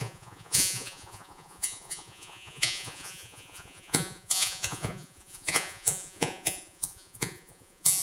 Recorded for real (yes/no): no